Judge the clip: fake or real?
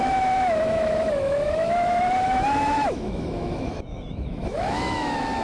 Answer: fake